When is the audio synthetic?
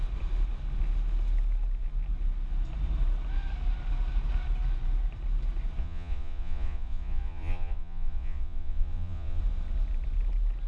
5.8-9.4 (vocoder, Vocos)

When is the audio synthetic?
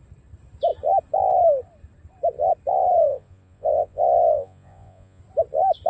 3.1-5.2 (vocoder, Vocos)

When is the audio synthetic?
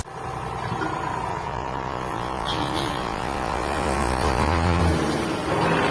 1.3-4.8 (vocoder, Vocos)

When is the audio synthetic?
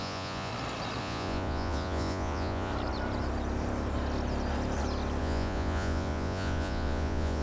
0.0-0.5 (vocoder, Vocos); 1.0-2.7; 5.2-7.4